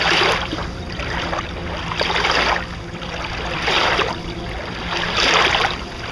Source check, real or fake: real